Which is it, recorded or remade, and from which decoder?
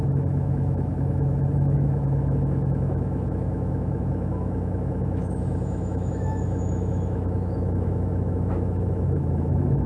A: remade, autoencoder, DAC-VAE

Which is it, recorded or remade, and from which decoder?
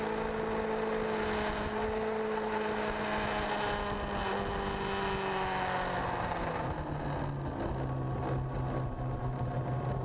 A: recorded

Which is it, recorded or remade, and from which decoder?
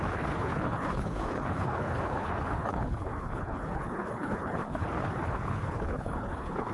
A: remade, codec, HILCodec